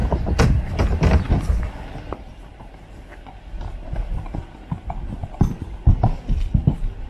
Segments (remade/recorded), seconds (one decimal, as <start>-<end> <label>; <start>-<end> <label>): 0.0-7.1 recorded